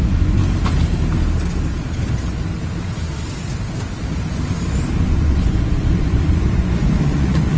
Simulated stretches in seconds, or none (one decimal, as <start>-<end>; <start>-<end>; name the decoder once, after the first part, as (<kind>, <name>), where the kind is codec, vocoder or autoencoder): 0.0-0.4 (vocoder, Vocos); 5.0-7.6